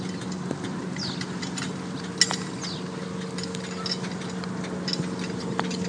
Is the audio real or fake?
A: real